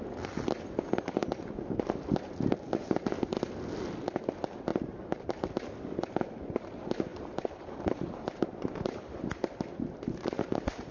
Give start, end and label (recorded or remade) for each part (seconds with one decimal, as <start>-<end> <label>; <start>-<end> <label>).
0.0-4.7 recorded; 4.7-5.5 remade; 5.5-7.1 recorded; 7.1-10.9 remade